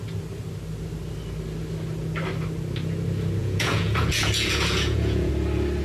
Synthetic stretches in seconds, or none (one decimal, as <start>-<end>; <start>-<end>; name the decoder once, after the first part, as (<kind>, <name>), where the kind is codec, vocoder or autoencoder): 3.4-5.3 (vocoder, Vocos)